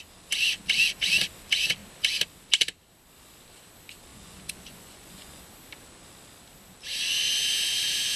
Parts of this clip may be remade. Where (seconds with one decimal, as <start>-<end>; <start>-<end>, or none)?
4.1-5.4